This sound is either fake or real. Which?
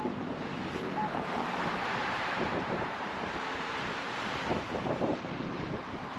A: fake